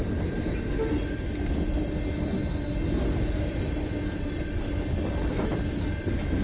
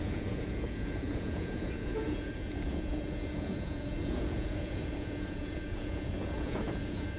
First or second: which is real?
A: first